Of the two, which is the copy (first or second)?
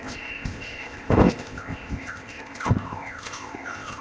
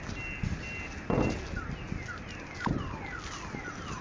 first